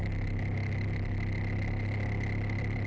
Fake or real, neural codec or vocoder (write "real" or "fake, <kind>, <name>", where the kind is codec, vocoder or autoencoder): real